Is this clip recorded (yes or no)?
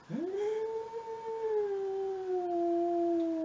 yes